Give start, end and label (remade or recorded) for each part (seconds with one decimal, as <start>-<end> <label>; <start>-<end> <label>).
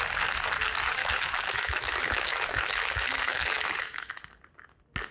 0.0-1.0 recorded; 1.0-4.1 remade; 4.1-5.1 recorded